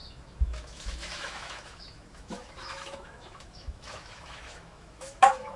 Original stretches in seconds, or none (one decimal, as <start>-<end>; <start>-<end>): none

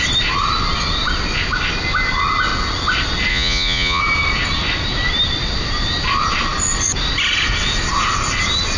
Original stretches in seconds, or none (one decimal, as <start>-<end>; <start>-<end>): 0.0-3.3; 4.0-8.8